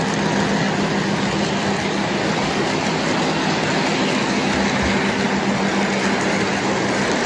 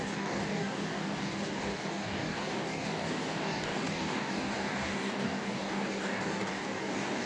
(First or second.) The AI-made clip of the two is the second